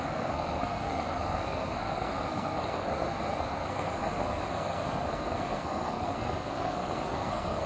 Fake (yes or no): yes